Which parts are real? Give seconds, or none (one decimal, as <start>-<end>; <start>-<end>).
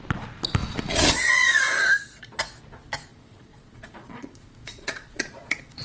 0.0-0.6; 2.2-3.1